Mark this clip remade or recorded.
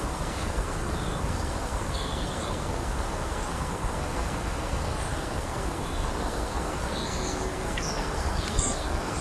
remade